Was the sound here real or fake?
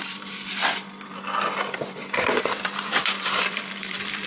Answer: fake